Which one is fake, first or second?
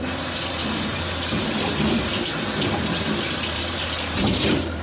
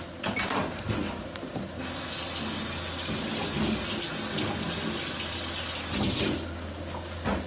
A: first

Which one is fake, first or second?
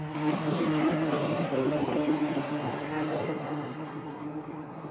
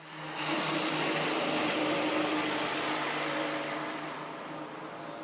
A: first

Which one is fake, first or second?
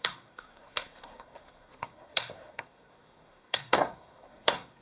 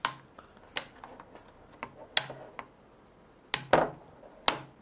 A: first